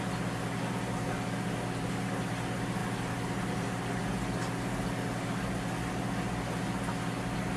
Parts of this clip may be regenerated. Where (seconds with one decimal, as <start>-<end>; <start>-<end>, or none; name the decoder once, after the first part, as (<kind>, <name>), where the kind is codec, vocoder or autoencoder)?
none